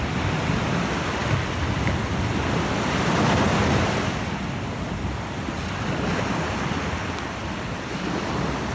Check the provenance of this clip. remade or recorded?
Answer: recorded